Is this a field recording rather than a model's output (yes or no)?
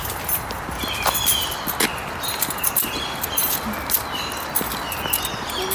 yes